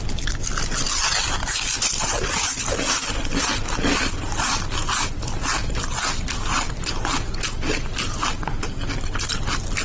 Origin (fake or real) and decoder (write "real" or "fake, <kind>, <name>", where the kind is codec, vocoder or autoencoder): real